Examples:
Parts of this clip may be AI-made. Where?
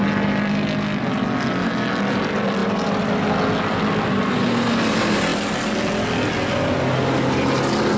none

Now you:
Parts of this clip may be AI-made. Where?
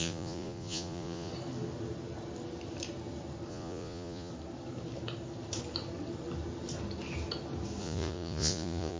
0.0-1.3 (vocoder, Vocos); 3.5-4.3; 7.8-9.0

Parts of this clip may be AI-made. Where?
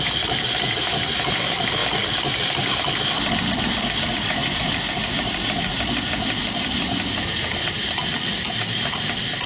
none